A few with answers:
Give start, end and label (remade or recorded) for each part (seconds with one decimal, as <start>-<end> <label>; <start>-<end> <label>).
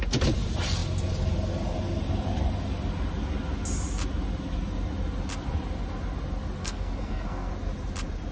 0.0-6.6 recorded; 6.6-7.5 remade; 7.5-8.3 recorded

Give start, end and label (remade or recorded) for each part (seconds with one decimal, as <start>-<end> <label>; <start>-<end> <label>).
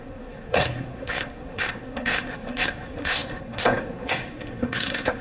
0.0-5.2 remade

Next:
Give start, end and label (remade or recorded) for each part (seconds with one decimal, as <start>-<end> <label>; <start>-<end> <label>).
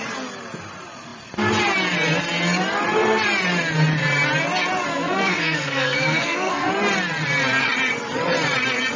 0.0-4.9 recorded; 4.9-6.7 remade; 6.7-9.0 recorded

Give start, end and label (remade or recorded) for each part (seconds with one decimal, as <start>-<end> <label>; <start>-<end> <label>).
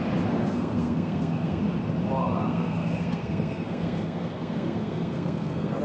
0.0-0.4 recorded; 0.4-1.6 remade; 1.6-2.2 recorded; 2.2-5.8 remade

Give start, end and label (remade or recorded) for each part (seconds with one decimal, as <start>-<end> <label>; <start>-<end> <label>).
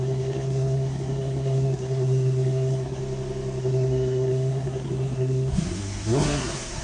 0.0-3.0 remade; 3.0-3.6 recorded; 3.6-6.8 remade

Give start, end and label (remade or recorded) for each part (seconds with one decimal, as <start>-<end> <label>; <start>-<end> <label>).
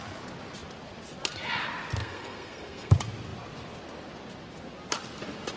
0.0-2.0 recorded; 2.0-2.9 remade; 2.9-5.6 recorded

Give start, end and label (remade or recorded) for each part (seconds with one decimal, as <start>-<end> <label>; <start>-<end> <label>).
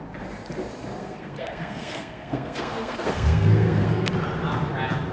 0.0-1.0 recorded; 1.0-4.1 remade; 4.1-5.1 recorded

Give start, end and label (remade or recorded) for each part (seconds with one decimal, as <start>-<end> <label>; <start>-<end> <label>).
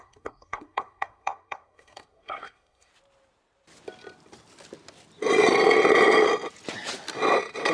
0.0-2.9 remade; 2.9-7.7 recorded